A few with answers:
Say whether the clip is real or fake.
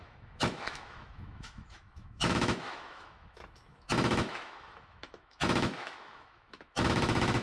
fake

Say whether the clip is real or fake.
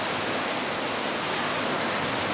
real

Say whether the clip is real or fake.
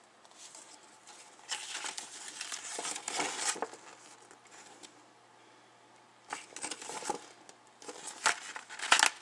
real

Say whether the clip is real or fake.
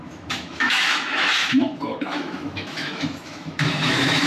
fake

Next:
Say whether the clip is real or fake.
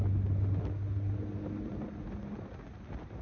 real